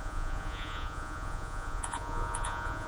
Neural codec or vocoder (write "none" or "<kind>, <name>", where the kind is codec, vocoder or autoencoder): vocoder, Vocos